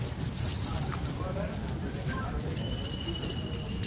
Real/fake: real